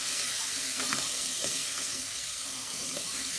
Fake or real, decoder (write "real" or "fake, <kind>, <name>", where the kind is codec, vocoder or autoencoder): fake, codec, SNAC